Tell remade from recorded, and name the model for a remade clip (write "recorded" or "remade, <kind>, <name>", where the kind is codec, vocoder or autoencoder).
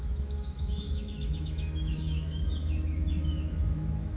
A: remade, autoencoder, DAC-VAE